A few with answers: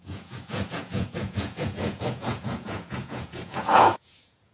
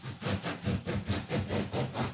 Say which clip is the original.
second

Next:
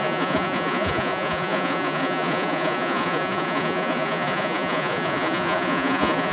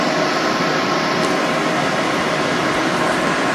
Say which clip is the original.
second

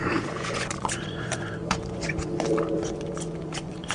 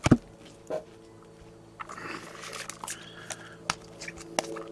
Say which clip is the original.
second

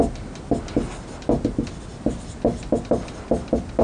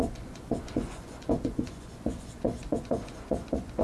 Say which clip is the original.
first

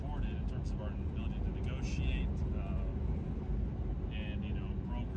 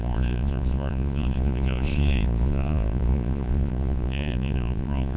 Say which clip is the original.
first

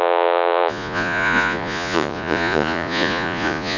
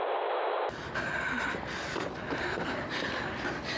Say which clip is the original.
second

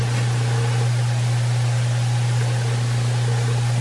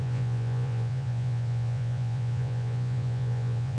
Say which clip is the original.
first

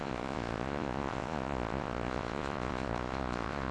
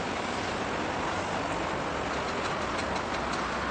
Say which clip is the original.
second